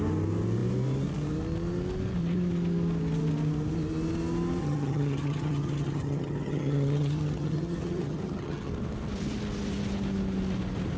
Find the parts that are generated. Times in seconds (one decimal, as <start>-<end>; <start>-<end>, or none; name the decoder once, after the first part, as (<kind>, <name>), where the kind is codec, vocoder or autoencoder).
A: 4.6-8.7 (vocoder, HiFi-GAN)